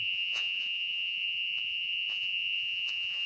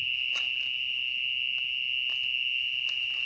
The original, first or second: second